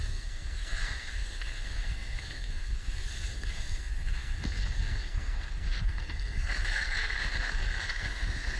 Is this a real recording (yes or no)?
no